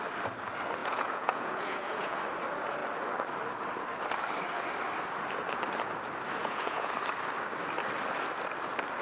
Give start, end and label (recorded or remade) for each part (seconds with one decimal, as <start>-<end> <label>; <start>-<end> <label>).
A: 0.0-0.8 recorded; 0.8-2.2 remade; 2.2-6.4 recorded; 6.4-6.9 remade; 6.9-9.0 recorded